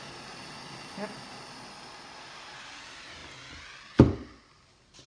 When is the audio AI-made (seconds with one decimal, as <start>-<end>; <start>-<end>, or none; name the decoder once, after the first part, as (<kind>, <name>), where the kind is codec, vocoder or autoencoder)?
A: none